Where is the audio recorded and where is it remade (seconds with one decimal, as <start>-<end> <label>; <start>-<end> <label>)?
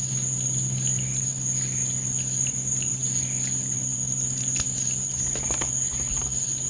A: 0.0-6.7 recorded